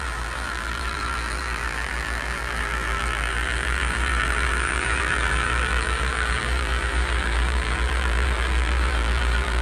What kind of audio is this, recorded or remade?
remade